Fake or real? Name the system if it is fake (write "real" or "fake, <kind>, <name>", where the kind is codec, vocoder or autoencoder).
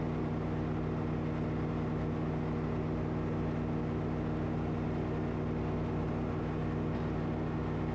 real